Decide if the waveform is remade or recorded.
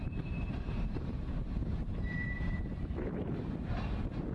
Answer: remade